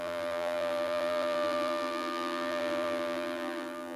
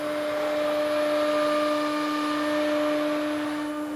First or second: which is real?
second